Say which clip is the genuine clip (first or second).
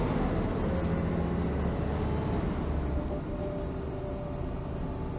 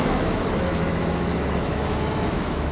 first